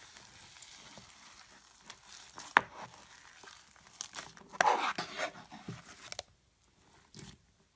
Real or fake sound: real